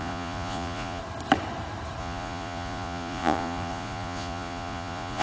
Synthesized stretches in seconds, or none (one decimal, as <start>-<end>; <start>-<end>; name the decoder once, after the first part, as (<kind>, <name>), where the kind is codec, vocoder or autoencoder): 0.0-1.0 (vocoder, Vocos); 2.0-5.2